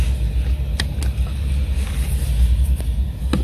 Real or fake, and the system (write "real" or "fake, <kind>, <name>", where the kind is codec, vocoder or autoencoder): real